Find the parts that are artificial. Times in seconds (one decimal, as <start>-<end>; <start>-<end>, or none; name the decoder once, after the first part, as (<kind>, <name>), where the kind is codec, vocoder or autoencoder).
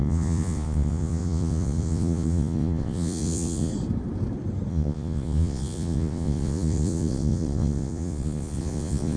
0.0-3.7 (vocoder, Vocos); 4.7-9.2